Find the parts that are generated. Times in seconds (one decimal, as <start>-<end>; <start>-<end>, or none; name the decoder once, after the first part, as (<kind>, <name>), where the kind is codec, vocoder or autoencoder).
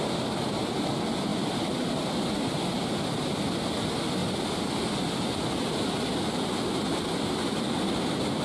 1.3-2.6 (vocoder, BigVGAN v2)